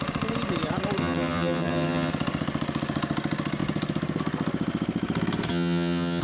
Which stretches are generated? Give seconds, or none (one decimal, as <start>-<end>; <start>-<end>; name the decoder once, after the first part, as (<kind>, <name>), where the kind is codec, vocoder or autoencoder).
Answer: 1.0-2.1 (vocoder, HiFi-GAN); 5.5-6.2